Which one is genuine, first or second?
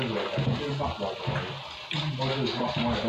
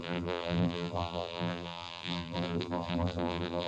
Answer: first